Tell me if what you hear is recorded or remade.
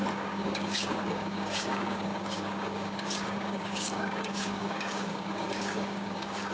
remade